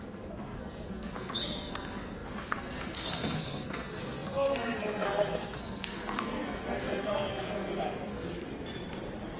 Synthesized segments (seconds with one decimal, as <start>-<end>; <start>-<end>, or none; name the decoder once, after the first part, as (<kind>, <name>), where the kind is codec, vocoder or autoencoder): 0.0-8.5 (codec, SNAC)